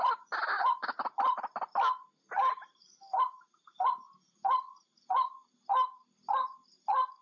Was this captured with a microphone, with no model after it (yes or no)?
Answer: yes